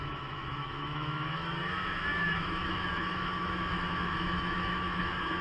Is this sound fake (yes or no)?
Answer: yes